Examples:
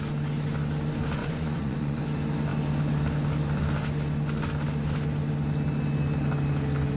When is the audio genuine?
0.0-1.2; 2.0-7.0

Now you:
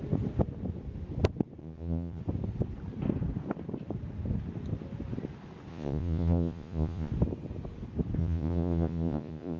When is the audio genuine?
0.0-1.6; 2.2-5.7; 7.1-8.2